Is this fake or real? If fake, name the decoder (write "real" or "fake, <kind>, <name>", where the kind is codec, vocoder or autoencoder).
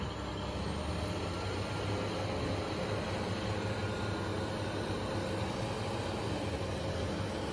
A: real